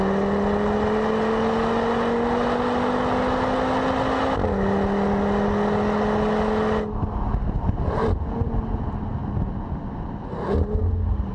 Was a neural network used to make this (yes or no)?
no